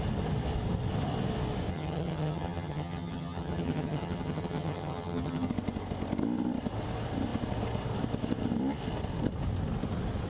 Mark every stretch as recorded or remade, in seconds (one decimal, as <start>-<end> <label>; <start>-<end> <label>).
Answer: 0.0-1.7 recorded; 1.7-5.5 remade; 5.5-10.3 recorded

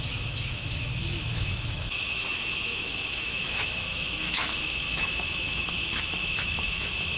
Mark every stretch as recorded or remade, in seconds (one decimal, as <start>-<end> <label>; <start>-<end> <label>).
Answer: 0.0-7.2 remade

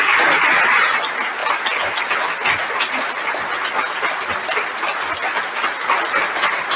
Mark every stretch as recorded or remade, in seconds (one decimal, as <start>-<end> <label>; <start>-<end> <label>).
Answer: 0.0-6.8 recorded